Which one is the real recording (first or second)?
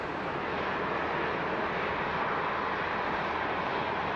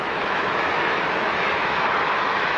first